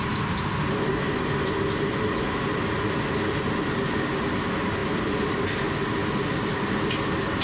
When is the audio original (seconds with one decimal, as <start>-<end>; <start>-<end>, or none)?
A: 0.0-7.4